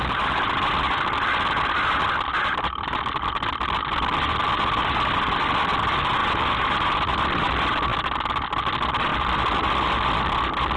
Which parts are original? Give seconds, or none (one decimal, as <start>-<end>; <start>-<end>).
0.0-10.8